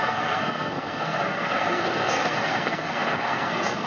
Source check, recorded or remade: remade